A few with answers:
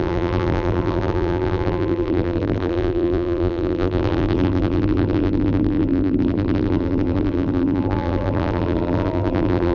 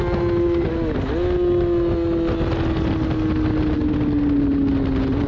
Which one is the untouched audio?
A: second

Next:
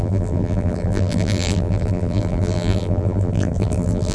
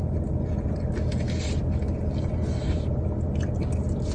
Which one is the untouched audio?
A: second